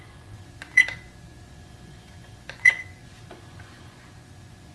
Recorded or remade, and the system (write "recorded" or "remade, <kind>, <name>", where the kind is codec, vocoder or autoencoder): remade, vocoder, Vocos